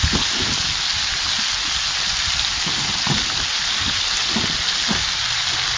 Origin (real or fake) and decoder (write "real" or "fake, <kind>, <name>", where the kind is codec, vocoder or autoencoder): real